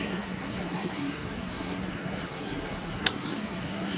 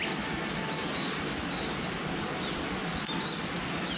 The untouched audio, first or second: second